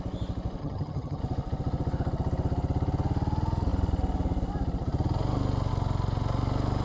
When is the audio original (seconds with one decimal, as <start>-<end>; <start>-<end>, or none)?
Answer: 0.0-0.6; 1.2-6.8